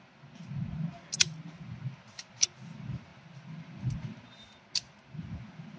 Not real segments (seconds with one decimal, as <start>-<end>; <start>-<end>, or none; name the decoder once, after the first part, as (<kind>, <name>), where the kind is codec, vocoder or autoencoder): none